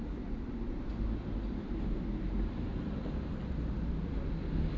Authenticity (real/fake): real